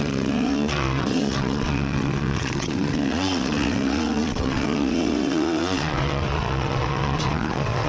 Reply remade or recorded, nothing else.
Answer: remade